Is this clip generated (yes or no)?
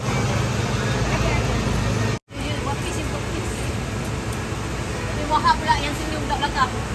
no